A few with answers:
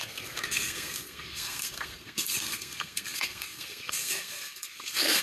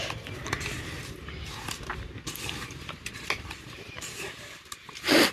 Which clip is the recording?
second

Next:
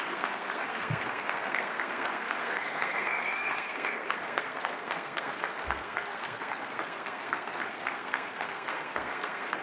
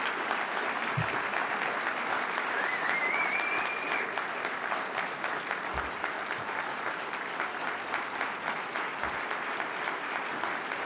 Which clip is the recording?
second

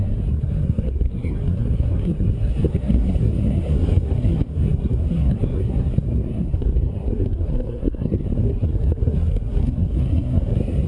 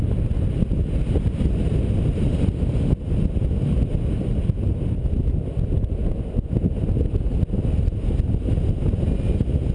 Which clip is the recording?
second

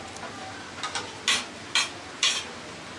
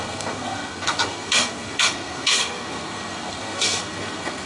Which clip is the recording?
first